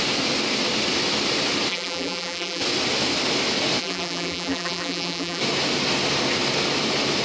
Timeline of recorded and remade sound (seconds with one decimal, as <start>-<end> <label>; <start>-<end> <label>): 0.0-1.7 recorded; 1.7-2.6 remade; 2.6-3.8 recorded; 3.8-5.4 remade; 5.4-7.2 recorded